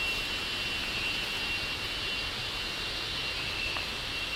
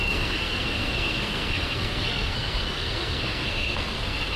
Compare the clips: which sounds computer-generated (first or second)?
second